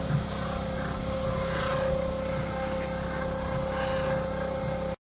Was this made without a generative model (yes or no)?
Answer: yes